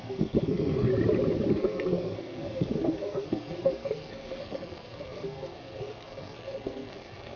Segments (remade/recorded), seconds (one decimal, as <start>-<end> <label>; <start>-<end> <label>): 0.0-0.9 remade; 0.9-1.5 recorded; 1.5-7.4 remade